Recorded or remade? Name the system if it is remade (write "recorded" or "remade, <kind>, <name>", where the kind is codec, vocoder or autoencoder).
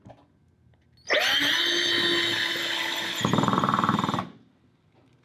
recorded